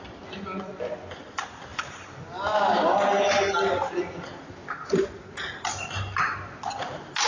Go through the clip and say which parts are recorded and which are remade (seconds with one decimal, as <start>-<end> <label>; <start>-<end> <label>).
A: 0.0-7.3 recorded